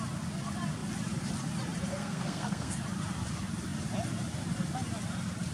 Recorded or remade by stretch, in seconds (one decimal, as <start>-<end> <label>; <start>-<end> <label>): 0.0-1.9 recorded; 1.9-2.8 remade; 2.8-5.5 recorded

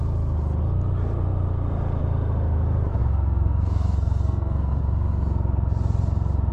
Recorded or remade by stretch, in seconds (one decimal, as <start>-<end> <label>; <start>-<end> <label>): 0.0-3.0 recorded; 3.0-4.8 remade; 4.8-6.5 recorded

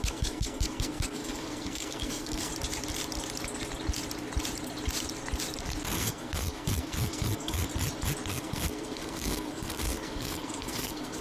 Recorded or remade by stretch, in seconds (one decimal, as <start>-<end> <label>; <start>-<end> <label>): 0.0-2.5 remade; 2.5-5.9 recorded; 5.9-7.7 remade; 7.7-8.3 recorded; 8.3-11.2 remade

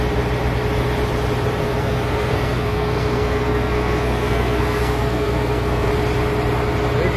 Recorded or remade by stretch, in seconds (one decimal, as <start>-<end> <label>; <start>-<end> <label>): 0.0-1.6 recorded; 1.6-5.9 remade; 5.9-7.2 recorded